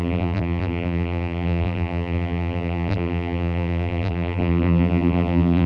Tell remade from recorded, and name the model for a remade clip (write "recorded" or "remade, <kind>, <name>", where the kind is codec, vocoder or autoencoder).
remade, vocoder, BigVGAN v2